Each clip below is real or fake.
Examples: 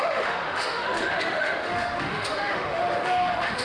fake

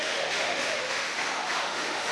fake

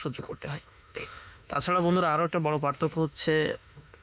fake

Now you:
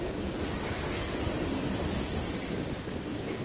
real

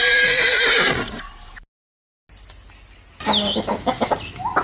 real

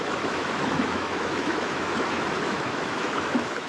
fake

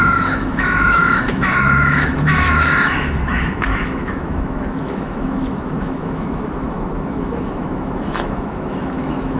fake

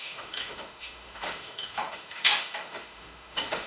fake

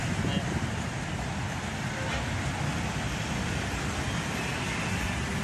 real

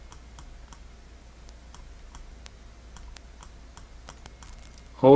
real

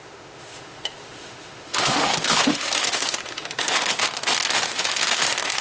fake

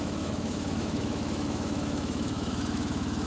fake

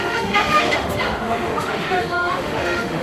fake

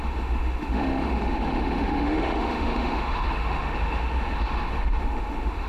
fake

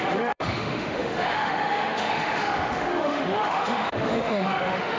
fake